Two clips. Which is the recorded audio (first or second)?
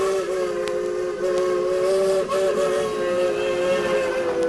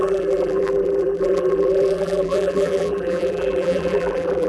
first